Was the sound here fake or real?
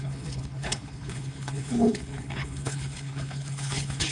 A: fake